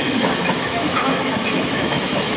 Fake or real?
fake